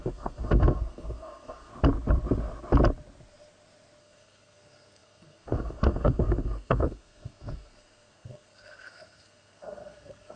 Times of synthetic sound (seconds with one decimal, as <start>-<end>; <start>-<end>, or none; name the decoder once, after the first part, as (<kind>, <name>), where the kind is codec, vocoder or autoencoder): 0.0-1.7 (codec, SNAC); 4.0-10.4